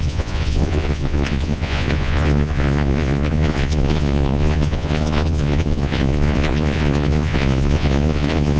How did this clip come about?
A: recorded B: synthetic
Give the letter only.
B